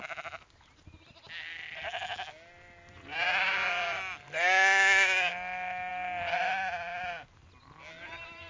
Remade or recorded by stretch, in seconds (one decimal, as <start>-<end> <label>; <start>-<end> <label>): 0.0-8.5 recorded